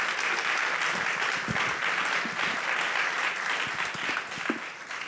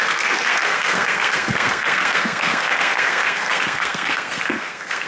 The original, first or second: first